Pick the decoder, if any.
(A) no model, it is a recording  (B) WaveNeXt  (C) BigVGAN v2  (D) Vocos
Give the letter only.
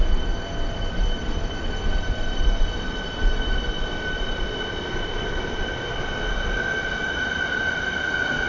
A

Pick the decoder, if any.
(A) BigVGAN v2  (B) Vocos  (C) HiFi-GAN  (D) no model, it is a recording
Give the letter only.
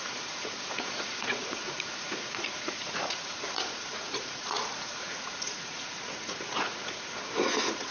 B